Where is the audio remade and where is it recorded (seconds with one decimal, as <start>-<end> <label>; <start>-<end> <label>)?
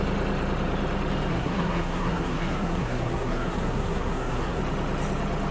0.0-1.3 recorded; 1.3-4.6 remade; 4.6-5.5 recorded